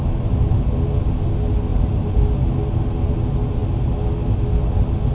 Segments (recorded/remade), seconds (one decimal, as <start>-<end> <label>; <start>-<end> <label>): 0.0-5.1 recorded

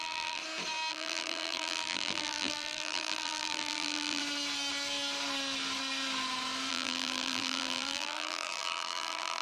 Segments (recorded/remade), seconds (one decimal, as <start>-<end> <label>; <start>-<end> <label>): 0.0-0.4 remade; 0.4-0.9 recorded; 0.9-4.2 remade; 4.2-6.7 recorded; 6.7-9.4 remade

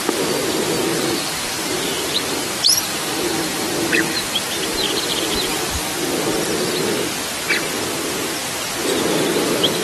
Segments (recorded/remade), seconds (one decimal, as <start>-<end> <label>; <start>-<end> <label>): 0.0-0.9 recorded; 0.9-5.7 remade; 5.7-9.8 recorded

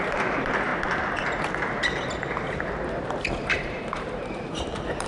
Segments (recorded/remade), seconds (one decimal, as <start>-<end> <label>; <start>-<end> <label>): 0.0-0.7 remade; 0.7-3.4 recorded; 3.4-5.1 remade

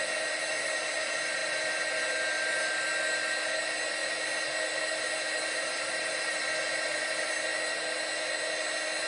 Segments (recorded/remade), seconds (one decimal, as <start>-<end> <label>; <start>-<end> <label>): 0.0-5.6 recorded; 5.6-6.4 remade; 6.4-9.1 recorded

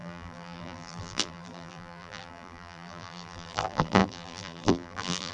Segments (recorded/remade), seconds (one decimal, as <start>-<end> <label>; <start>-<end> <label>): 0.0-5.3 remade